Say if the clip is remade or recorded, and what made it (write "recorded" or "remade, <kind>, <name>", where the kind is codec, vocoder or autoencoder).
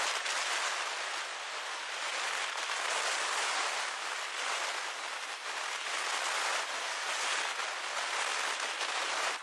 recorded